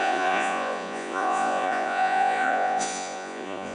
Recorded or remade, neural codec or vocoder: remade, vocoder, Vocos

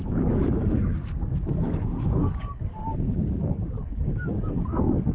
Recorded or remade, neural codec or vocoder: remade, codec, DAC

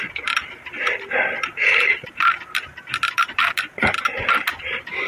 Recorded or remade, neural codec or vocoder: recorded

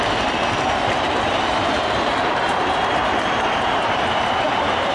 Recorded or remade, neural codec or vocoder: remade, vocoder, BigVGAN v2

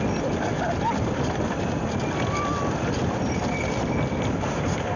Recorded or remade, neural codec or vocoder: recorded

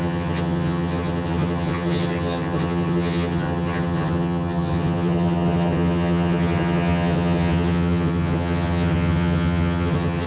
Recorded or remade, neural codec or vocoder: remade, vocoder, HiFi-GAN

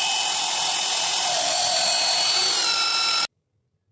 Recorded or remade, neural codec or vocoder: recorded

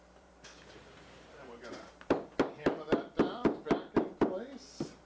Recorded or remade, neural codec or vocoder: remade, vocoder, BigVGAN v2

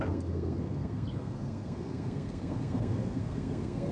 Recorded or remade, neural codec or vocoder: remade, codec, SNAC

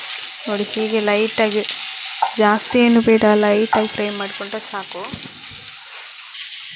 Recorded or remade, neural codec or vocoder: recorded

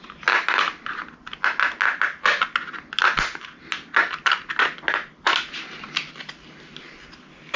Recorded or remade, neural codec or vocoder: recorded